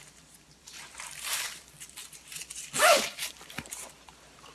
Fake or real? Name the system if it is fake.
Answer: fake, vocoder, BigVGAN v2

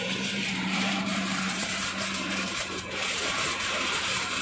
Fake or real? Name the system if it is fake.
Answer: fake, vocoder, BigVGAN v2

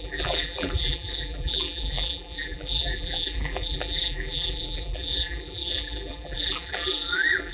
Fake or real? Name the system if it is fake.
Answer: fake, vocoder, BigVGAN v2